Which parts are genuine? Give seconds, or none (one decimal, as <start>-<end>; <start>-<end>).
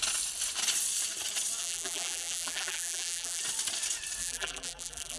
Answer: 0.0-1.6; 3.4-4.2